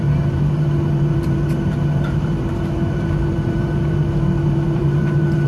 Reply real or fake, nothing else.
fake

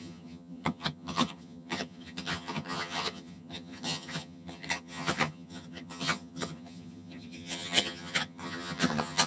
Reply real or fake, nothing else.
fake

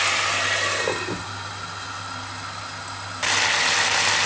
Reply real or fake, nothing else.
real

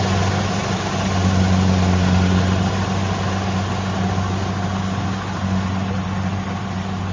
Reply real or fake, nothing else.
real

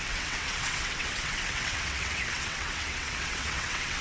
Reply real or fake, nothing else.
fake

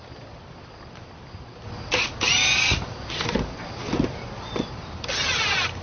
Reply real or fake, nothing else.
real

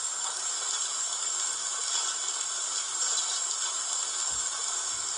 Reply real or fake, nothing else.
real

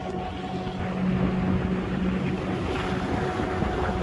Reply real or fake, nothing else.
real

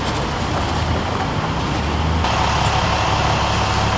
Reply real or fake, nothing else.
real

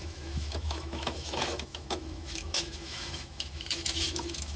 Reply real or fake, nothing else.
fake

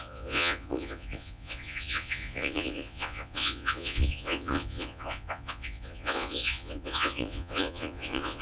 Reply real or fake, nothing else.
fake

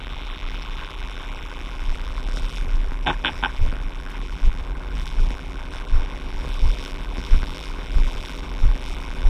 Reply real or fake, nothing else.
fake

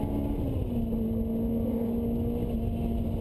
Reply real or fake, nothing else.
real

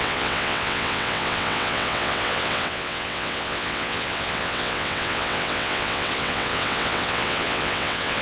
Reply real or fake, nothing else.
fake